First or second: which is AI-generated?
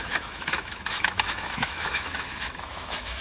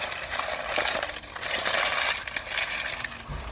first